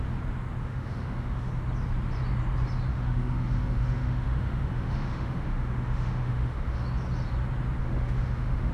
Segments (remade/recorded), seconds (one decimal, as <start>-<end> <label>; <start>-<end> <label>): 0.0-0.6 recorded; 0.6-1.5 remade; 1.5-2.9 recorded; 2.9-6.8 remade; 6.8-7.8 recorded; 7.8-8.7 remade